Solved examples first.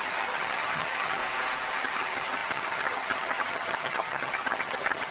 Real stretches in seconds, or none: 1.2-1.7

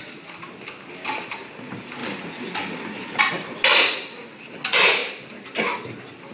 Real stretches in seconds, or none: 0.0-6.3

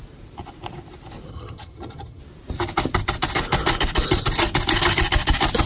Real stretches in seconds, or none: 0.0-1.3; 2.2-5.7

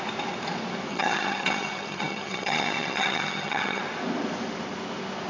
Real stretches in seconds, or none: 0.0-0.9; 3.8-5.3